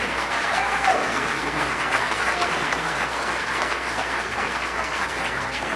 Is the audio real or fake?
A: fake